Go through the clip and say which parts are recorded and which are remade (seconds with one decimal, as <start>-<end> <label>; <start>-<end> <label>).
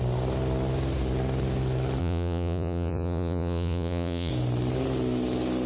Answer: 0.0-2.0 recorded; 2.0-4.3 remade; 4.3-5.7 recorded